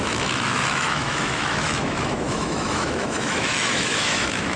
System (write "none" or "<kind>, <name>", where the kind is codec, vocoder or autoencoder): autoencoder, DAC-VAE